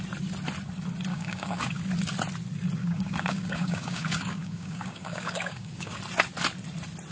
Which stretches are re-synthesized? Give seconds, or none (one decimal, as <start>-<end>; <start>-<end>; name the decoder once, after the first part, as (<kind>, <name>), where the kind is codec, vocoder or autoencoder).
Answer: 1.1-1.8 (codec, DAC); 2.8-6.0